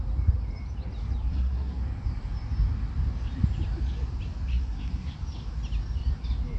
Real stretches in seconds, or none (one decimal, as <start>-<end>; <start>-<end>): 0.0-1.3; 1.8-4.5; 5.1-6.6